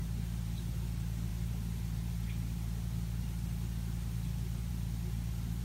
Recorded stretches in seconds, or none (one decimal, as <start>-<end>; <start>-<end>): 0.0-5.6